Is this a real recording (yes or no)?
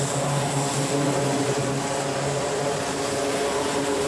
yes